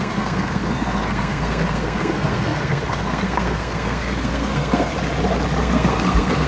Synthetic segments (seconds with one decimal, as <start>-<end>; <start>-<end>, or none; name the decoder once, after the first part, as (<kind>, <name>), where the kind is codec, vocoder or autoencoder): 0.0-4.9 (codec, SNAC); 5.6-6.5